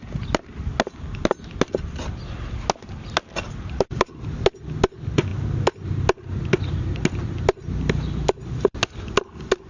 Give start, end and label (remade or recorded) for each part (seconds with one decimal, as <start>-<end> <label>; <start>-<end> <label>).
0.0-9.7 recorded